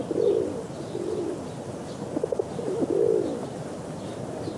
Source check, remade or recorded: recorded